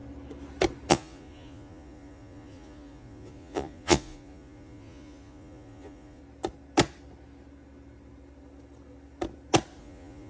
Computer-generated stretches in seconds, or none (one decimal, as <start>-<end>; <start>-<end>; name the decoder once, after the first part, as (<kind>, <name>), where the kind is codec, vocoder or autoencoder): 0.9-6.2 (vocoder, Vocos); 9.8-10.3